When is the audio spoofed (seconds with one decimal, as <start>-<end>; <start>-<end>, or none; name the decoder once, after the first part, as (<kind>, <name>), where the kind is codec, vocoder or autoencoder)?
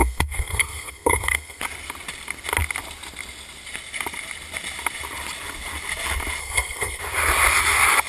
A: 0.0-1.6 (codec, SNAC); 6.4-7.0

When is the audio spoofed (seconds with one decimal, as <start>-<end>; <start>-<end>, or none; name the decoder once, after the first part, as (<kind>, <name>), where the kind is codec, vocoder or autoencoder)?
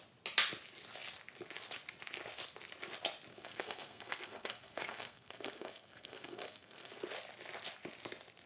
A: 3.3-7.0 (codec, SNAC)